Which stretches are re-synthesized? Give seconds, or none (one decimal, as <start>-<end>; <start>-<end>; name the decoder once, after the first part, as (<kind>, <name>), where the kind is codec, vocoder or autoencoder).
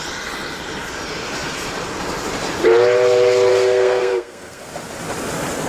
3.5-4.7 (codec, SNAC)